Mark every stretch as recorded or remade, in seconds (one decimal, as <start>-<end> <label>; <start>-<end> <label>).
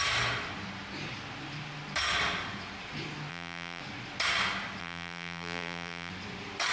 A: 0.0-3.3 recorded; 3.3-3.8 remade; 3.8-4.8 recorded; 4.8-6.1 remade; 6.1-6.7 recorded